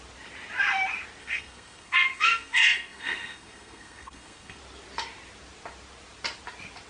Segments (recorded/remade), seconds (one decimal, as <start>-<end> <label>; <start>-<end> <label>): 0.0-1.2 recorded; 1.2-4.6 remade; 4.6-6.9 recorded